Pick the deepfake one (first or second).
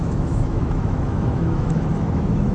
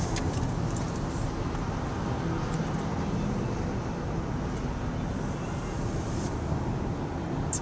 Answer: first